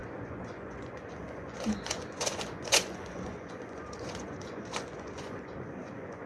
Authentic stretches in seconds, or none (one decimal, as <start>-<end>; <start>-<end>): none